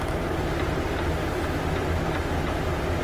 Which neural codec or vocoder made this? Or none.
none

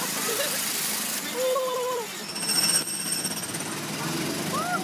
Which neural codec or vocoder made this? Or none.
none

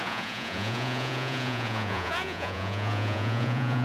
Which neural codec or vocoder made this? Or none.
vocoder, Vocos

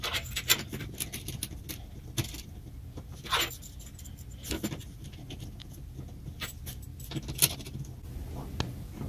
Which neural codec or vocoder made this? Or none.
none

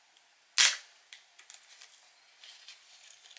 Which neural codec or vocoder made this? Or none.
none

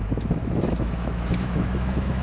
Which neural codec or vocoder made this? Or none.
autoencoder, DAC-VAE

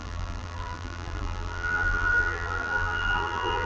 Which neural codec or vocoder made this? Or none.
vocoder, BigVGAN v2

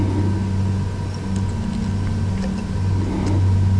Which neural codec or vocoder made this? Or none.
none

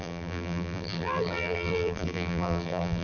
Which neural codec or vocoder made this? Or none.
vocoder, BigVGAN v2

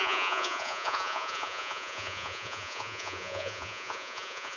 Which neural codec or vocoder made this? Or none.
vocoder, Vocos